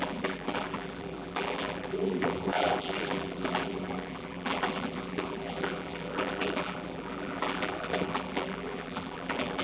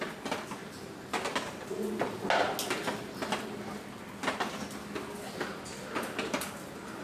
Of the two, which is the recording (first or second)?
second